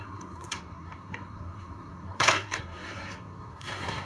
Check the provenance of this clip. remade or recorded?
remade